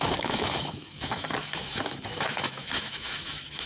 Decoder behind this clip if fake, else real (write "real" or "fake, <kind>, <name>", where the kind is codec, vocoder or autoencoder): fake, autoencoder, DAC-VAE